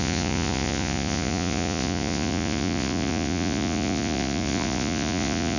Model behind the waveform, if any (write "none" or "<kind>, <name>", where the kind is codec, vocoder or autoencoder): vocoder, Vocos